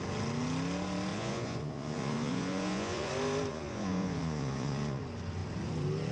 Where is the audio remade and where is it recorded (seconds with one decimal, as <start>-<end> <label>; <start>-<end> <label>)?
0.0-1.1 recorded; 1.1-3.1 remade; 3.1-3.5 recorded; 3.5-5.0 remade; 5.0-6.1 recorded